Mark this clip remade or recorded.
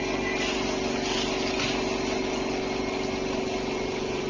recorded